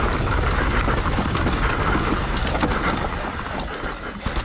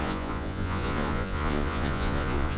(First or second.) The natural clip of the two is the first